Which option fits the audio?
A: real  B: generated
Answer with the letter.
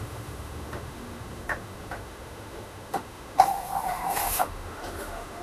B